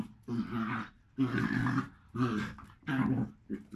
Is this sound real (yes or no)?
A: no